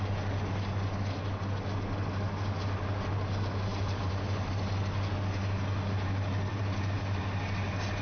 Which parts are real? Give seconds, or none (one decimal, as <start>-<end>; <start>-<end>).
0.0-3.7; 4.6-6.5; 7.2-8.0